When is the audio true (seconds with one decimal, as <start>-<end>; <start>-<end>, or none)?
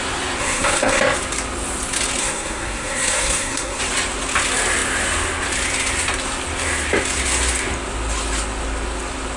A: 0.0-0.4; 1.0-2.2; 3.8-9.4